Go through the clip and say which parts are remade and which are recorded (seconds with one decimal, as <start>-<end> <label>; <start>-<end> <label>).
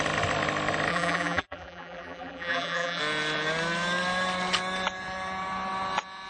0.0-0.9 recorded; 0.9-3.0 remade; 3.0-6.3 recorded